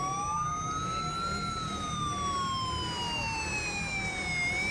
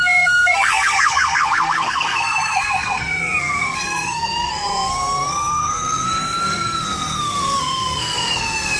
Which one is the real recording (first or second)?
first